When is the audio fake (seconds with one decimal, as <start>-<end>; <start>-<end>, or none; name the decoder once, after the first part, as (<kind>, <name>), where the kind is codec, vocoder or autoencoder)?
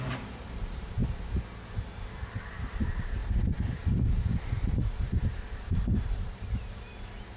0.0-1.0 (vocoder, BigVGAN v2); 2.5-3.2; 5.7-7.4